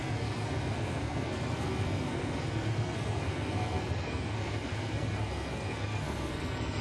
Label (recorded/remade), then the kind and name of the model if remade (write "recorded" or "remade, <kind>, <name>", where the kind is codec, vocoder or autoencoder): remade, codec, SNAC